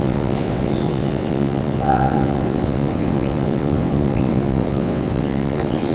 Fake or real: fake